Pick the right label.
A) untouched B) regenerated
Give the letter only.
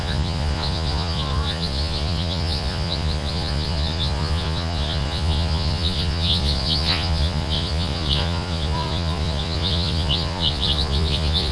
B